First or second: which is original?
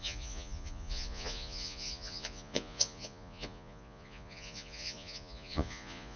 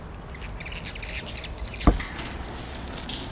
second